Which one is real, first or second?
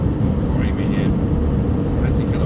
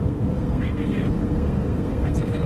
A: first